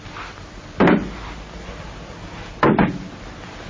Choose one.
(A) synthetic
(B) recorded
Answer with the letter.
B